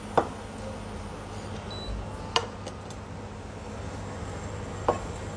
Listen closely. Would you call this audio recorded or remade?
recorded